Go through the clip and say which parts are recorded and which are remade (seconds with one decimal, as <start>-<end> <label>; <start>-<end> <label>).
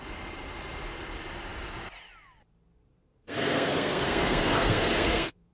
0.0-3.0 recorded; 3.0-5.5 remade